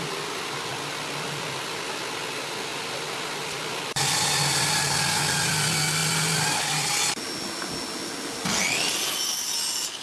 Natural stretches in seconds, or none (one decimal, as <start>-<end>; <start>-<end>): 0.0-10.0

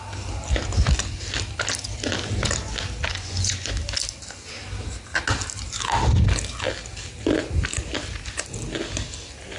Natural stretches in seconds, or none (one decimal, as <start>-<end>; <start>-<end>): 0.0-3.1; 3.7-9.6

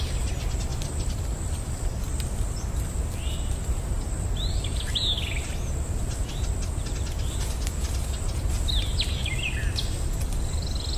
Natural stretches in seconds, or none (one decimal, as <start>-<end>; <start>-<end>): 0.0-0.7; 1.7-11.0

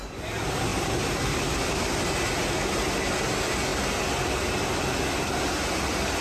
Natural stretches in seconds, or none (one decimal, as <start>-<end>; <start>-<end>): 0.0-0.7; 1.6-6.2

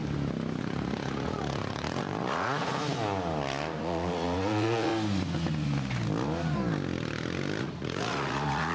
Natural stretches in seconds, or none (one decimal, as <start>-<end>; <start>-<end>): 0.0-0.6; 2.7-3.8; 4.9-7.6

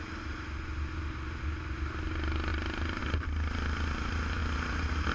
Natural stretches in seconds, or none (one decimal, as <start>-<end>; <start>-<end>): 0.0-5.1